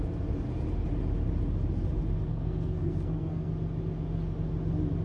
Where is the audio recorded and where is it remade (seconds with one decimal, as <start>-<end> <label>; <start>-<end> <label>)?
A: 0.0-2.3 recorded; 2.3-3.5 remade; 3.5-5.0 recorded